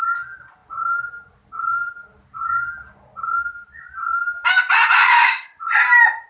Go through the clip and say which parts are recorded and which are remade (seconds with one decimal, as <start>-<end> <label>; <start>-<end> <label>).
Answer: 0.0-6.3 recorded

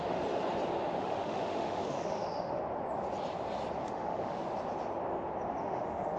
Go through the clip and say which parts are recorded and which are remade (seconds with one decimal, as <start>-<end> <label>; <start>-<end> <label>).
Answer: 0.0-1.0 recorded; 1.0-2.6 remade; 2.6-3.8 recorded; 3.8-4.4 remade; 4.4-5.6 recorded; 5.6-6.2 remade

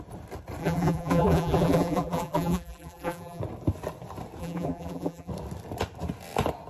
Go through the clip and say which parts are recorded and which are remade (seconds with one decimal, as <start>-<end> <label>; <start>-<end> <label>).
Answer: 0.0-0.6 recorded; 0.6-3.4 remade; 3.4-4.4 recorded; 4.4-5.3 remade; 5.3-6.7 recorded

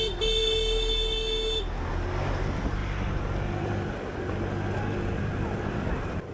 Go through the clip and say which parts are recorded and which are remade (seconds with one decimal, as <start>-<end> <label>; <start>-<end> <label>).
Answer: 0.0-6.3 recorded

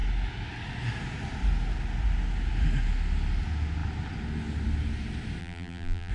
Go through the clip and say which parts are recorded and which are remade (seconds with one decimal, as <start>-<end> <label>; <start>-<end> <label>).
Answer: 0.0-5.4 recorded; 5.4-6.1 remade

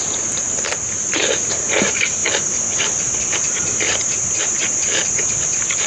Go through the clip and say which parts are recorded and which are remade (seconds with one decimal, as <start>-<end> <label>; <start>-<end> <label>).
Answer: 0.0-2.2 remade; 2.2-2.8 recorded; 2.8-5.9 remade

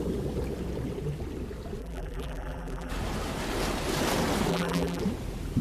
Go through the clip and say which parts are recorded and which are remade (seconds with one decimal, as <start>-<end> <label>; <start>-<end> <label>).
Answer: 0.0-1.8 recorded; 1.8-2.9 remade; 2.9-4.5 recorded; 4.5-5.0 remade; 5.0-5.6 recorded

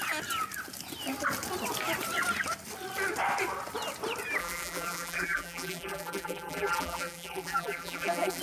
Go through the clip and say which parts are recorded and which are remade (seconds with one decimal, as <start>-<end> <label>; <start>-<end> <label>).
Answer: 0.0-4.4 recorded; 4.4-8.4 remade